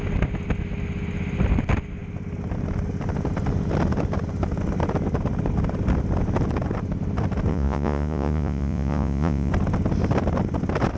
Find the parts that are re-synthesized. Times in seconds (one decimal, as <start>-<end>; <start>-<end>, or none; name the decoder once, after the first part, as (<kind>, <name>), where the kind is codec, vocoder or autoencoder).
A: 7.5-9.5 (vocoder, Vocos)